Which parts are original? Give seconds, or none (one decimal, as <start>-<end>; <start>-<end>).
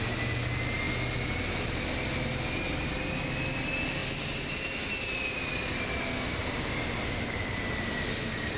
0.0-6.4; 7.6-8.6